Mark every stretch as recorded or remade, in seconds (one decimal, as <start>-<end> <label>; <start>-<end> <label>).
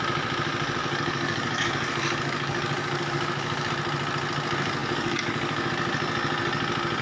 0.0-0.8 recorded; 0.8-3.7 remade; 3.7-4.8 recorded; 4.8-5.7 remade; 5.7-7.0 recorded